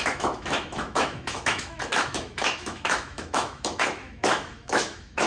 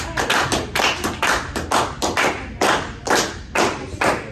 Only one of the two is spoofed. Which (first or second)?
first